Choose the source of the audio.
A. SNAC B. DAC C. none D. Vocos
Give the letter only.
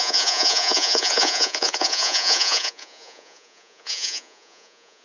D